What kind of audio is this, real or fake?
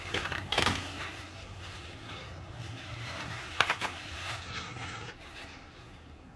fake